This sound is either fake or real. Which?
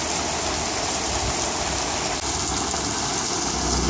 real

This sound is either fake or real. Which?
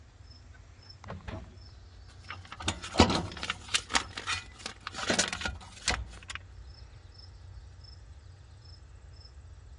real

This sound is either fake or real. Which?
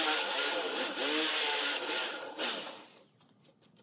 real